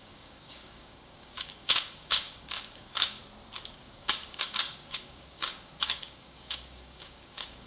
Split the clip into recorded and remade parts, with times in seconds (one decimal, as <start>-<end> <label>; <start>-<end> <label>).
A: 0.0-3.2 remade; 3.2-3.7 recorded; 3.7-7.7 remade